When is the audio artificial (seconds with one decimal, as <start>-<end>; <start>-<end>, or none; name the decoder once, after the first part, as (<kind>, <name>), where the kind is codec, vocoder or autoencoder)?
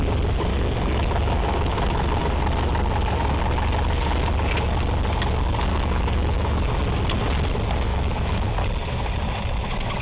0.5-2.2 (autoencoder, DAC-VAE); 5.7-6.7; 7.9-8.5